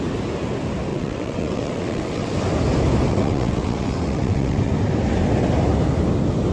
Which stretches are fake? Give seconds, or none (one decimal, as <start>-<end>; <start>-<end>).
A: 0.9-2.3; 3.1-4.7